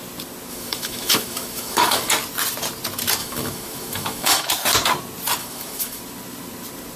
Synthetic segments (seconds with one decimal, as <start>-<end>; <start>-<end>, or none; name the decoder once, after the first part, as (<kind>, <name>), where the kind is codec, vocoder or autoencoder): 0.5-2.1 (autoencoder, DAC-VAE); 3.2-4.5; 5.4-6.0